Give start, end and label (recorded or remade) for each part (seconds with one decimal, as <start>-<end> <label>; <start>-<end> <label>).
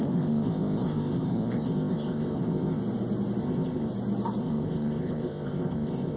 0.0-2.8 remade; 2.8-3.4 recorded; 3.4-3.9 remade; 3.9-4.4 recorded; 4.4-6.2 remade